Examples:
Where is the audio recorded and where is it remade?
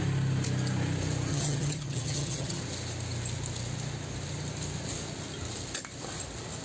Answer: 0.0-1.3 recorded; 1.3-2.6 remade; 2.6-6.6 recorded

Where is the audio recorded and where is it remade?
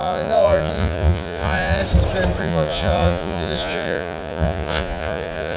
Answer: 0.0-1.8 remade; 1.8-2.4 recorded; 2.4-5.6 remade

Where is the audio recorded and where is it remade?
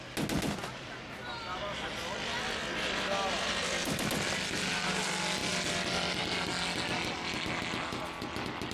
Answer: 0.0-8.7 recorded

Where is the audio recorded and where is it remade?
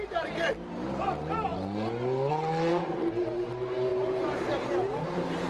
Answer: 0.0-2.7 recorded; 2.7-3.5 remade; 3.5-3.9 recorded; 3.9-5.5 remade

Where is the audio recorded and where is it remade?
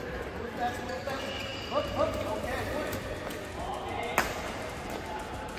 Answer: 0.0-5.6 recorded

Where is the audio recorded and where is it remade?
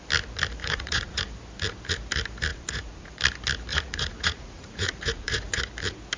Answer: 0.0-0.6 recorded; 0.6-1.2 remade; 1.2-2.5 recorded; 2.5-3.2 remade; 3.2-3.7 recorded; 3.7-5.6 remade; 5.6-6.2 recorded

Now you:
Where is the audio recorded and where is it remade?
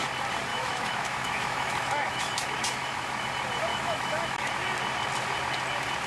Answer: 0.0-0.5 recorded; 0.5-3.3 remade; 3.3-3.7 recorded; 3.7-4.5 remade; 4.5-6.1 recorded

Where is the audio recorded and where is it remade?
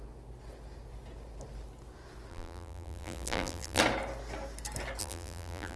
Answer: 0.0-2.3 recorded; 2.3-3.8 remade; 3.8-5.0 recorded; 5.0-5.8 remade